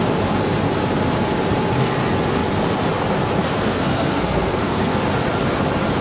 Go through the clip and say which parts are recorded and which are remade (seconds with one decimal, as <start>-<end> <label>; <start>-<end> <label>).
0.0-3.4 recorded; 3.4-5.0 remade; 5.0-6.0 recorded